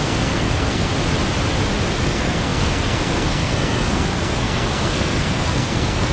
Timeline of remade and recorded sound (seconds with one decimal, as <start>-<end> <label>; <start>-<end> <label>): 0.0-0.9 remade; 0.9-2.0 recorded; 2.0-6.1 remade